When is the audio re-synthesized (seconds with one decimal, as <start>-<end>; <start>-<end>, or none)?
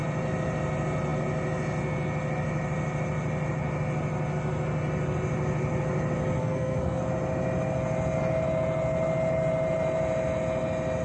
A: 6.4-7.0